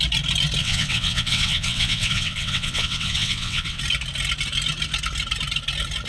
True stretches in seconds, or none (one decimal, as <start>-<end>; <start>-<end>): 0.0-0.6; 3.8-6.1

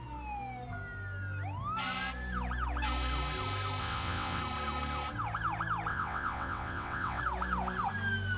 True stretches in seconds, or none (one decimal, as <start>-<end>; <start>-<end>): 0.0-3.8; 4.4-5.9; 7.2-8.4

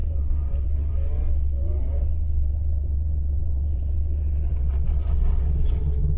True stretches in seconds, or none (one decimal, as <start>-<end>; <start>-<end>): none

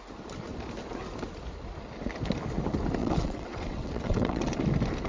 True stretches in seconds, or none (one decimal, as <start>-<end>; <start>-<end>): 0.0-3.0; 4.6-5.1

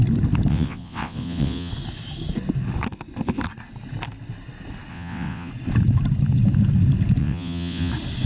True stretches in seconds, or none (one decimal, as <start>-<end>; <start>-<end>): 0.0-0.5; 1.7-4.9; 5.5-7.2; 7.9-8.3

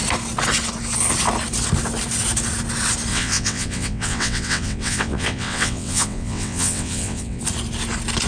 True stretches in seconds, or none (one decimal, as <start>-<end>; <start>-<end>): 0.0-3.1; 7.4-8.3

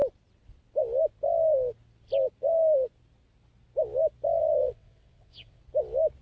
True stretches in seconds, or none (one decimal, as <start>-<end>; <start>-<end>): 0.0-4.4; 5.6-6.2

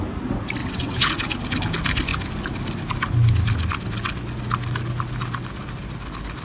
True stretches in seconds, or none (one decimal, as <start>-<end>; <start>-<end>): 0.0-0.6; 1.1-6.4